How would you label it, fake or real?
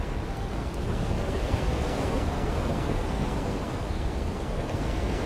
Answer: fake